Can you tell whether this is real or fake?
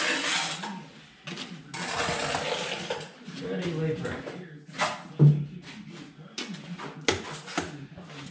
real